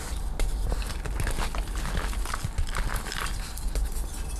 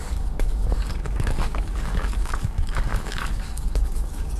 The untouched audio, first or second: first